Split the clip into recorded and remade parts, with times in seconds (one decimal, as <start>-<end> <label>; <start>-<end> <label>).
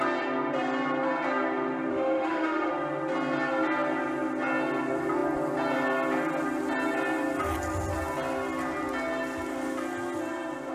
0.0-1.9 recorded; 1.9-2.7 remade; 2.7-10.7 recorded